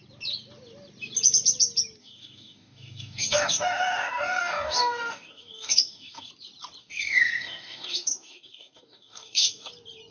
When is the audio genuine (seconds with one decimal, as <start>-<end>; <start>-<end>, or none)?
0.0-2.0; 6.3-6.8; 9.7-10.1